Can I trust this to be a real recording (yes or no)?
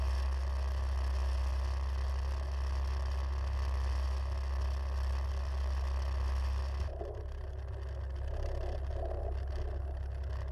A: yes